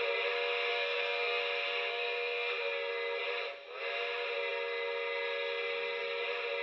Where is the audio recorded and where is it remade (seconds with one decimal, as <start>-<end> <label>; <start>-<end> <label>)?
0.0-0.7 recorded; 0.7-1.4 remade; 1.4-1.9 recorded; 1.9-2.9 remade; 2.9-6.6 recorded